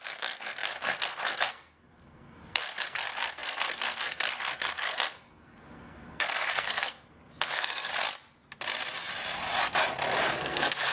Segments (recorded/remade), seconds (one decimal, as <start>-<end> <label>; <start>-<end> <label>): 0.0-7.9 remade; 7.9-10.4 recorded; 10.4-10.9 remade